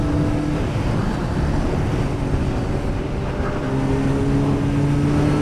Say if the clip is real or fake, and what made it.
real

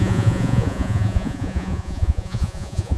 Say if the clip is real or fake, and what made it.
fake, vocoder, Vocos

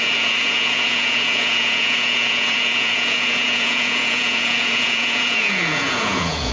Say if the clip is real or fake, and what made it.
fake, vocoder, Vocos